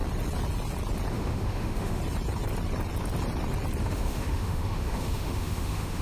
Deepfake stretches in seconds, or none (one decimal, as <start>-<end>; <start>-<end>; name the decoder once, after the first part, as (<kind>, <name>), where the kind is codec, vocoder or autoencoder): 1.1-2.0 (autoencoder, DAC-VAE); 3.8-6.0